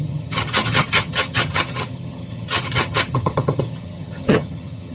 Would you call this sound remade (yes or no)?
yes